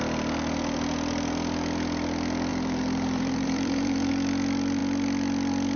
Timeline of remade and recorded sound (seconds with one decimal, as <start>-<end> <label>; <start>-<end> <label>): 0.0-2.5 recorded; 2.5-4.1 remade; 4.1-5.8 recorded